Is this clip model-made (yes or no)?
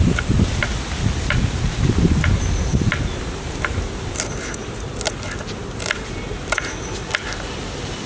no